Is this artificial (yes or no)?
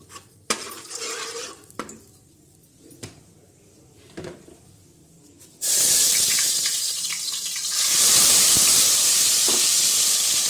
yes